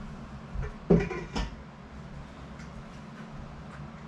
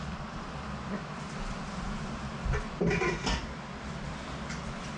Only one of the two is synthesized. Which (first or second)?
second